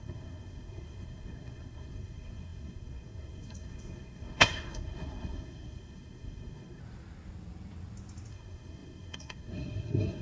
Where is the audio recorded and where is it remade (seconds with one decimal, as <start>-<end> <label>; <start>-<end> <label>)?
0.0-6.8 remade; 6.8-8.3 recorded; 8.3-10.2 remade